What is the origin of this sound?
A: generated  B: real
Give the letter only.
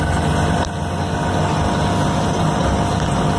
B